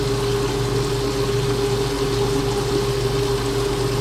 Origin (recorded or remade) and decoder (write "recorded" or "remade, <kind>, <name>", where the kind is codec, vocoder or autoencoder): recorded